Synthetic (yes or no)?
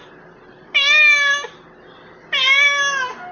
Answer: no